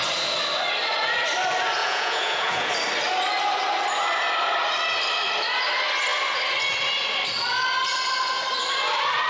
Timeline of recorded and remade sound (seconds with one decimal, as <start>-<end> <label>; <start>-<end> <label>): 0.0-1.8 recorded; 1.8-2.7 remade; 2.7-9.3 recorded